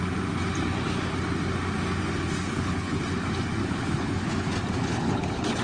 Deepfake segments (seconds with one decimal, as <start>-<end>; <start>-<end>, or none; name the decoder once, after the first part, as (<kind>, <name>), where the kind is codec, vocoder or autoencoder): 2.5-3.0 (codec, HILCodec); 3.6-4.3; 4.8-5.6